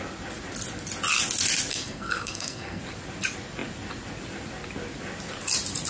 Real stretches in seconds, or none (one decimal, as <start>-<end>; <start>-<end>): 0.0-1.7; 2.8-5.9